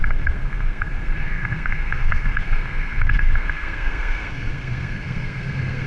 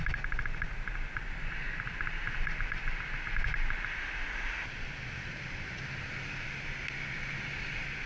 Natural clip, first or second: second